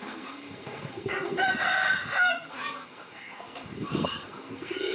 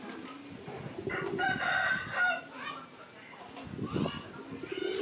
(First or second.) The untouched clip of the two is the second